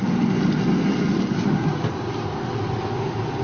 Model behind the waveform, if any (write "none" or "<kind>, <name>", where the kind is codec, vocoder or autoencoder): none